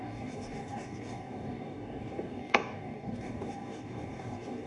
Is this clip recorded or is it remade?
remade